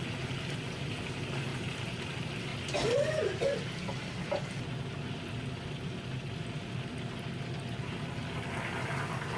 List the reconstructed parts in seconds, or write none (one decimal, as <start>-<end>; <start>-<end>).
1.5-2.1